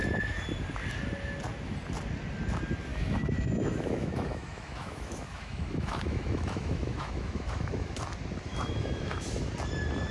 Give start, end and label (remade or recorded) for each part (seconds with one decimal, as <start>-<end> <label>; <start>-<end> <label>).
0.0-2.9 recorded; 2.9-8.0 remade; 8.0-8.5 recorded; 8.5-9.4 remade; 9.4-10.1 recorded